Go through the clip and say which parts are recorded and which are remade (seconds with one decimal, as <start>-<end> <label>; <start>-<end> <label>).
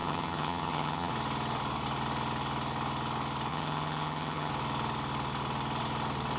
0.0-1.1 remade; 1.1-3.5 recorded; 3.5-4.5 remade; 4.5-6.4 recorded